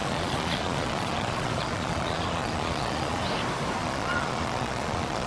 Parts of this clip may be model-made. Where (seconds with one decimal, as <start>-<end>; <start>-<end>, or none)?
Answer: 0.0-3.2; 3.8-5.3